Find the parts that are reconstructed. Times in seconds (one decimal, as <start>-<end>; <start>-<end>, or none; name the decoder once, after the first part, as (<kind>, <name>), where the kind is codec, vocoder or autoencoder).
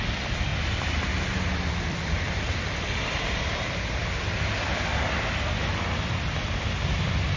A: 0.0-0.5 (vocoder, BigVGAN v2); 1.8-4.0